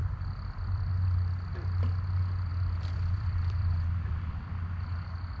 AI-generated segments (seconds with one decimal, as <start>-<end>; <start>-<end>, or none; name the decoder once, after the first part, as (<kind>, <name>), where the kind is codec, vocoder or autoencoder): 0.0-0.9 (vocoder, BigVGAN v2); 2.5-4.4